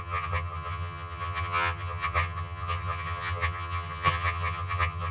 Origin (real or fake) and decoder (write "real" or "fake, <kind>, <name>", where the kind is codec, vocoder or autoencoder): fake, vocoder, HiFi-GAN